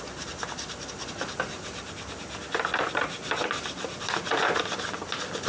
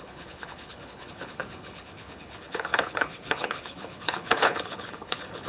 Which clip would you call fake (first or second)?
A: second